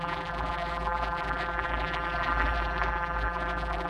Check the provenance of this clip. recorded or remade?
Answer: remade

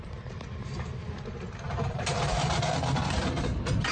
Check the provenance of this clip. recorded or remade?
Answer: remade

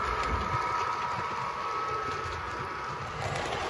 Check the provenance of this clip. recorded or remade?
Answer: recorded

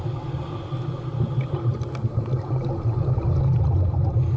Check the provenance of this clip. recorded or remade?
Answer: recorded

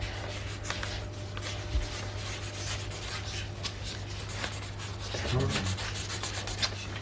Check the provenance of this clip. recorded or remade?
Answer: recorded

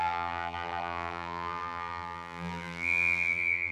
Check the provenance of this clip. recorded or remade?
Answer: remade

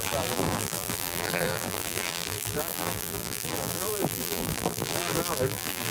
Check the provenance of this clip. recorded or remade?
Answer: remade